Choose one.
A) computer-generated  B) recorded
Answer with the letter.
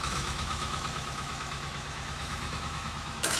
A